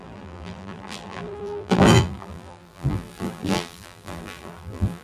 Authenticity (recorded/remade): remade